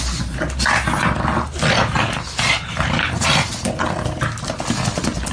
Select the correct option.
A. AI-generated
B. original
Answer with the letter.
B